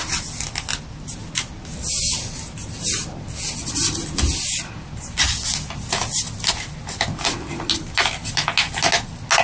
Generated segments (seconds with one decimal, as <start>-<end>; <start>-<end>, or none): none